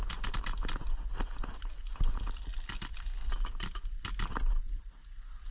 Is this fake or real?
real